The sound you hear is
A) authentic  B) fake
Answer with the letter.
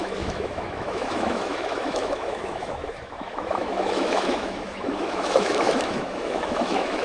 B